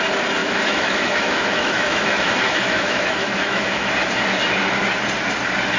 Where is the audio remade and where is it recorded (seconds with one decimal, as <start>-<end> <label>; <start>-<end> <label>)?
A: 0.0-0.4 recorded; 0.4-3.9 remade; 3.9-5.8 recorded